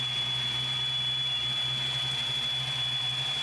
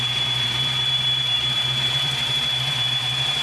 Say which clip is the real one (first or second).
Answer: first